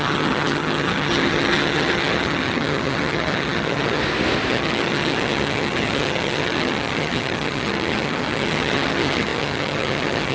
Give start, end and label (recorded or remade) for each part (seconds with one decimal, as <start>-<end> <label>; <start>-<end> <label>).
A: 0.0-4.0 remade; 4.0-4.5 recorded; 4.5-10.3 remade